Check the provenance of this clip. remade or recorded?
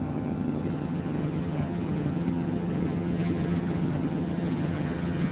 remade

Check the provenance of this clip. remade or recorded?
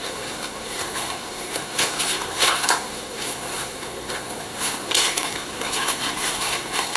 remade